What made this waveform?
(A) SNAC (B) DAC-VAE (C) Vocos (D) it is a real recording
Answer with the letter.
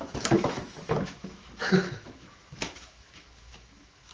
B